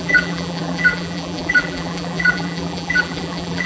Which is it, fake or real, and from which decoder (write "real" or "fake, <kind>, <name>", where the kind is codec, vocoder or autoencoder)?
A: fake, vocoder, BigVGAN v2